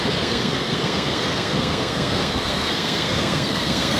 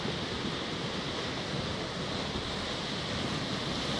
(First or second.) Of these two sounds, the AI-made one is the first